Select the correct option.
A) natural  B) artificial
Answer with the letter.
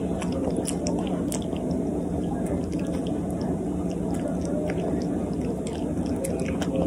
A